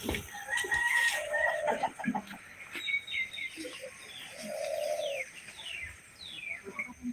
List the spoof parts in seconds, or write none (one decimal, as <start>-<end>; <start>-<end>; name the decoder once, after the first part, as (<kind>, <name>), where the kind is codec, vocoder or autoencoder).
none

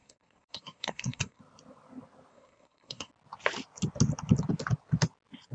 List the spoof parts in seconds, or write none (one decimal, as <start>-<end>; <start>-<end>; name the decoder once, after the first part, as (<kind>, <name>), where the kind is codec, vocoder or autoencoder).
0.0-1.4 (codec, SNAC); 2.3-3.1

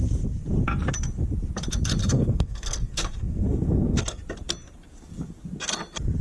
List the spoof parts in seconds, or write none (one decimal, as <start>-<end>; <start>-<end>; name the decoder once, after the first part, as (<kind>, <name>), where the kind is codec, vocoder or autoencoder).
2.0-4.2 (codec, SNAC)

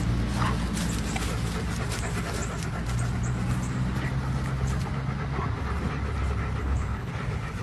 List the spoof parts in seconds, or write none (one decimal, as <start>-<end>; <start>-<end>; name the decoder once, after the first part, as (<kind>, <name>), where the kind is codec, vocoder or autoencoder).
6.6-7.1 (codec, HILCodec)

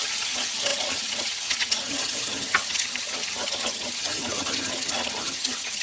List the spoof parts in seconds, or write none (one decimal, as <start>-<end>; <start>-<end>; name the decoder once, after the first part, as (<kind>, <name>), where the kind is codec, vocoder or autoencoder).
0.0-5.8 (vocoder, HiFi-GAN)